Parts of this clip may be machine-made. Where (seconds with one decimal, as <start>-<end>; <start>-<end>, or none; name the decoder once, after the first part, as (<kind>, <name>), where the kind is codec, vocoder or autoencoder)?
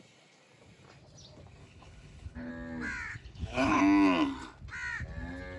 1.6-2.5 (codec, HILCodec); 3.1-3.8